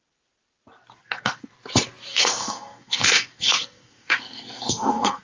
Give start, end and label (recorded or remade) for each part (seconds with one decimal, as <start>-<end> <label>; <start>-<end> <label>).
0.0-1.0 recorded; 1.0-1.5 remade; 1.5-2.1 recorded; 2.1-5.2 remade